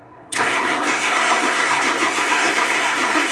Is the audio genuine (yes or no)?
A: no